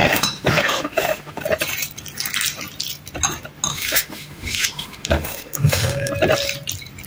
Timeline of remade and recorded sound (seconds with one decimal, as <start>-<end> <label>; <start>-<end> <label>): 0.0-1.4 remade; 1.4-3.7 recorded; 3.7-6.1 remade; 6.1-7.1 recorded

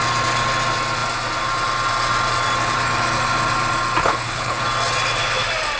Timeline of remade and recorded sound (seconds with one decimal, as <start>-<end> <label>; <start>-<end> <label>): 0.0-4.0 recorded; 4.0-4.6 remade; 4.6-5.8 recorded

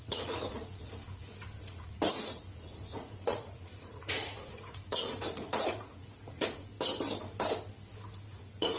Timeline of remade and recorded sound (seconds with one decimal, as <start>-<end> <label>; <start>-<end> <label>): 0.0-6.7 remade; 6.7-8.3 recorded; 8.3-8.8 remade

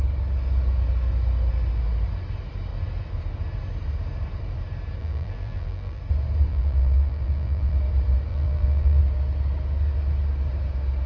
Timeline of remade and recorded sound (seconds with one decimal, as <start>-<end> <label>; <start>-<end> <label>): 0.0-5.0 recorded; 5.0-6.0 remade; 6.0-6.5 recorded; 6.5-7.8 remade; 7.8-8.3 recorded; 8.3-9.0 remade; 9.0-11.1 recorded